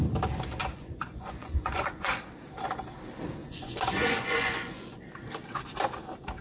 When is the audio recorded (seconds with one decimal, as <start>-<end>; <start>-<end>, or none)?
0.0-0.6; 2.2-3.4; 5.0-6.4